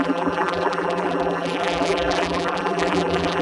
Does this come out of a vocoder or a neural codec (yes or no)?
yes